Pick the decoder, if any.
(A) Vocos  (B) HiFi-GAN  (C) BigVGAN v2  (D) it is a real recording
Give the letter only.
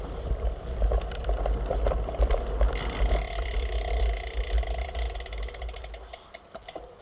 D